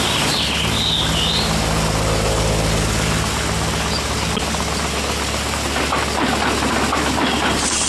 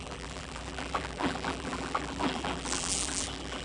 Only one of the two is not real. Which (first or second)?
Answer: second